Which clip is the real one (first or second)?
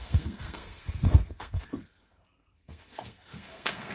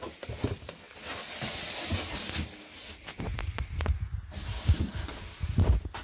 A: second